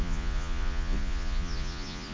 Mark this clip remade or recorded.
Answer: remade